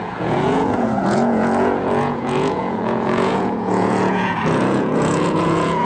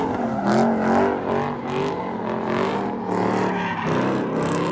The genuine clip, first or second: second